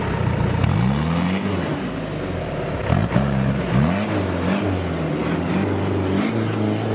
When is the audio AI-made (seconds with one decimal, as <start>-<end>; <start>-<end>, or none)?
3.0-3.5